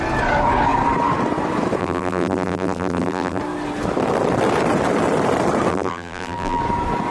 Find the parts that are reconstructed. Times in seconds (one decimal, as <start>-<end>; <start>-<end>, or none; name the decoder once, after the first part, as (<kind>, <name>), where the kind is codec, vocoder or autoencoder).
1.8-3.4 (vocoder, BigVGAN v2); 5.7-6.6